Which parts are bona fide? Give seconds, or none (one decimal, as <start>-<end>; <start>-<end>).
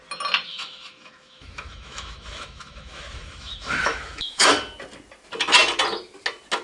0.0-0.5; 4.5-6.6